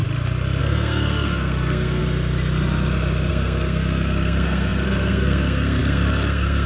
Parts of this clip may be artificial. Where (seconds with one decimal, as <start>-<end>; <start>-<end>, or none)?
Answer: 0.6-2.0; 3.3-6.7